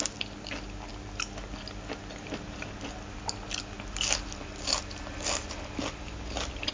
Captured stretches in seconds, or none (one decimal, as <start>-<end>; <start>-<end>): 0.0-6.7